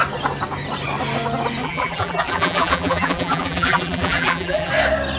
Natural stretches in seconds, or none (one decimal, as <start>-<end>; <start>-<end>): 0.0-1.6; 4.7-5.2